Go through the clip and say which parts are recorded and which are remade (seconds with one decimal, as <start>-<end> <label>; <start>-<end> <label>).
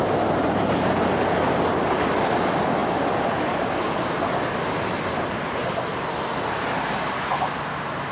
0.0-8.1 recorded